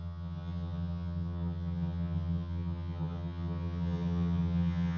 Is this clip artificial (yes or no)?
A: yes